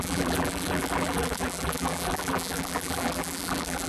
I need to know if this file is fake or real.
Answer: fake